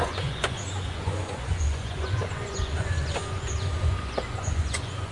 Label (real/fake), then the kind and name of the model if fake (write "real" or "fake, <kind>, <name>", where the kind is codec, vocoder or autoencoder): fake, vocoder, Vocos